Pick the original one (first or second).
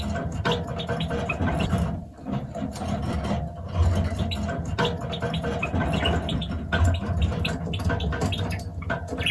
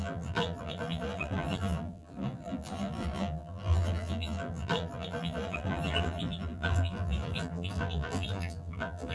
first